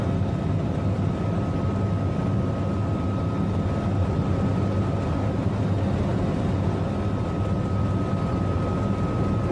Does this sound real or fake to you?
real